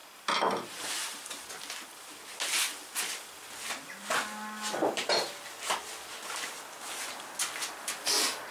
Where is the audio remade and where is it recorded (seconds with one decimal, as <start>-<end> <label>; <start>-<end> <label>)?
0.0-1.5 remade; 1.5-8.5 recorded